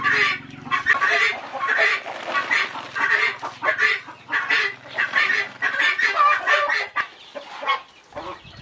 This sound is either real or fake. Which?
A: real